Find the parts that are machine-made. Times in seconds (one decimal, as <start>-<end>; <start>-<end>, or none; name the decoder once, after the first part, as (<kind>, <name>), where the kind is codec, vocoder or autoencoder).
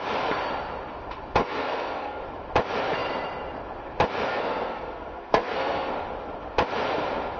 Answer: 1.4-2.2 (codec, SNAC); 4.3-5.9